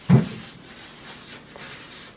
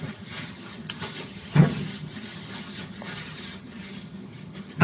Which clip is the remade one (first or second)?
second